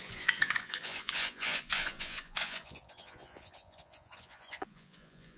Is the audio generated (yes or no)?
yes